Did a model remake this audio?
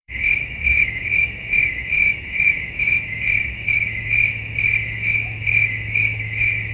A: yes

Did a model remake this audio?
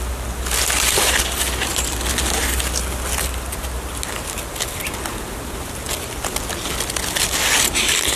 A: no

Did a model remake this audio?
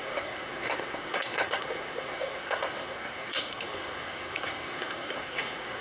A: yes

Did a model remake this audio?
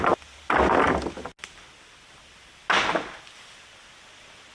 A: no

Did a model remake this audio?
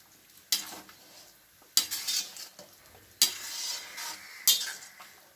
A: no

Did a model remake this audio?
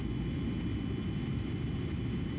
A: no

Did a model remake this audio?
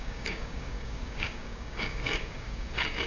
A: yes